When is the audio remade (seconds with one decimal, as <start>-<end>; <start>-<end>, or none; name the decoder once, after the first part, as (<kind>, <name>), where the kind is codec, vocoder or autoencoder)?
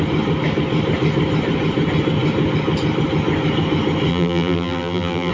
4.1-5.3 (vocoder, BigVGAN v2)